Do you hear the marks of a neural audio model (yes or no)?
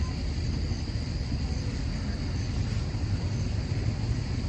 yes